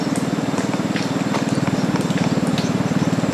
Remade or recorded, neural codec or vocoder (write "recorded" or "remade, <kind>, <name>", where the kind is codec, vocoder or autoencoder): recorded